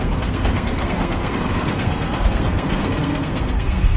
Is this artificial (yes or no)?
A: yes